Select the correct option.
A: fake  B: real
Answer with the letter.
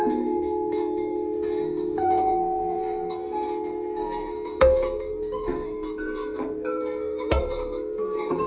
A